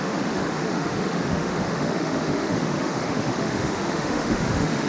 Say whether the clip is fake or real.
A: fake